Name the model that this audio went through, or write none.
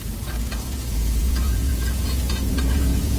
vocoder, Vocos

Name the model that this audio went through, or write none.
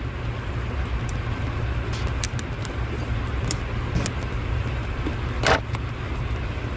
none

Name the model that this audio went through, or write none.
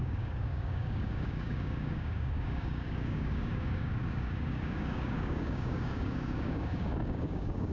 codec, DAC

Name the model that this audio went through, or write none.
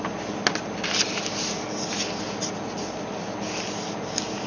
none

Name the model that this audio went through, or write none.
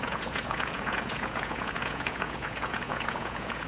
vocoder, Vocos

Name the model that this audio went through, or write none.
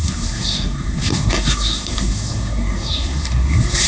codec, SNAC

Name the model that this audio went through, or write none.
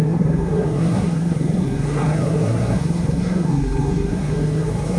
codec, SNAC